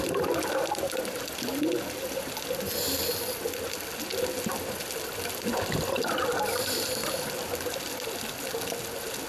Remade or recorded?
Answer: recorded